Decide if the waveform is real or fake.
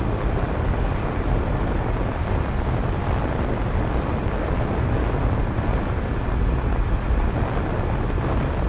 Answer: real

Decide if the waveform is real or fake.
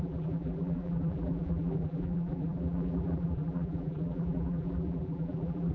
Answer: fake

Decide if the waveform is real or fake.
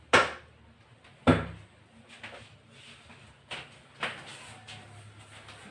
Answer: real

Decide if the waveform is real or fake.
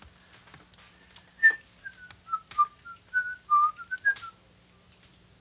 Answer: real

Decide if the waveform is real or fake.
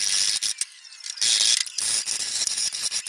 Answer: real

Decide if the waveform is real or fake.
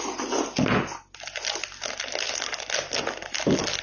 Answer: real